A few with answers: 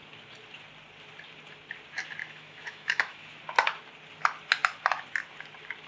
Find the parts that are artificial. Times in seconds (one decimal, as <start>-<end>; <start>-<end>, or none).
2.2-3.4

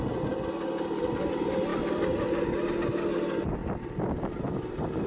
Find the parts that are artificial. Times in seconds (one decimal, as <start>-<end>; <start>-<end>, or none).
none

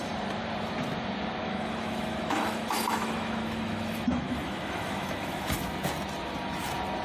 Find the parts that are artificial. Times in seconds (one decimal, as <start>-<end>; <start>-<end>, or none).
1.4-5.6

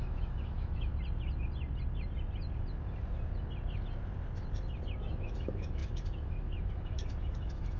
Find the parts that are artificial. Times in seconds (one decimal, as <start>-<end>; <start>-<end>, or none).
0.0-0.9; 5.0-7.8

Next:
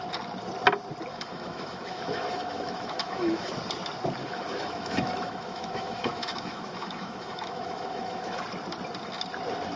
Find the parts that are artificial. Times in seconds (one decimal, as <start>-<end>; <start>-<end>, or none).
1.1-3.5; 4.2-8.4

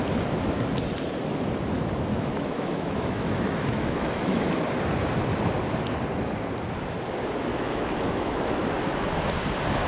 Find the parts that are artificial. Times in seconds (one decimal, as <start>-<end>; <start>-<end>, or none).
2.1-4.5; 7.5-8.6

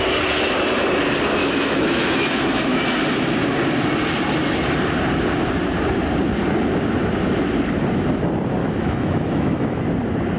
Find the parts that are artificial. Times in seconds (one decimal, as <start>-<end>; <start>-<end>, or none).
1.4-2.8; 8.6-9.8